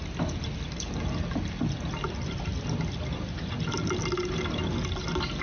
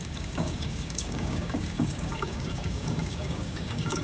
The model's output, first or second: second